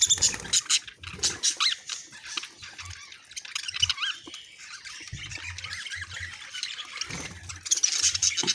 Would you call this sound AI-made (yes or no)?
no